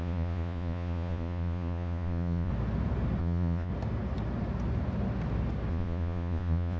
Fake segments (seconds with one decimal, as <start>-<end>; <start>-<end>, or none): 0.0-2.5; 3.2-3.7; 5.7-6.8